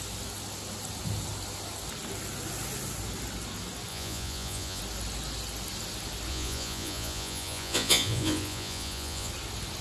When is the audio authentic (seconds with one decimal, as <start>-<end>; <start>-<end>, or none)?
0.0-3.9; 4.8-6.3; 9.3-9.8